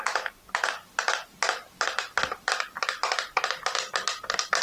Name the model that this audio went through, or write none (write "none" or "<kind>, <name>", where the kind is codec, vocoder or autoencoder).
none